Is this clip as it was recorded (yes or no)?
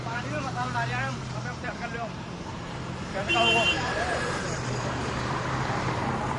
no